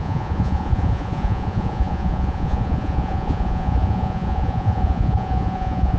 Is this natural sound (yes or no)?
no